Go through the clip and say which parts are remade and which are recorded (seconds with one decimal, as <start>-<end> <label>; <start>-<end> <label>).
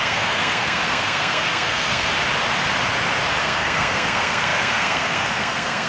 0.0-2.1 remade; 2.1-3.4 recorded; 3.4-5.9 remade